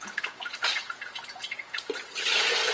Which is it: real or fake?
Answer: fake